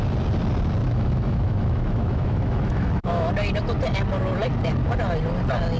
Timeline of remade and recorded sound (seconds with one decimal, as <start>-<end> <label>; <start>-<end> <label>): 0.0-0.8 recorded; 0.8-3.3 remade; 3.3-5.8 recorded